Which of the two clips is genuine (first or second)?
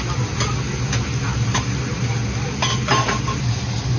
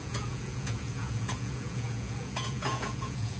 first